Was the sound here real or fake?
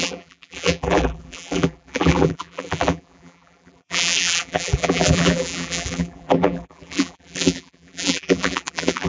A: fake